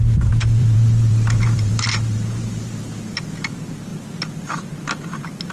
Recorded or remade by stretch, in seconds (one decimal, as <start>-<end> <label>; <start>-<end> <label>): 0.0-0.6 recorded; 0.6-2.7 remade; 2.7-5.5 recorded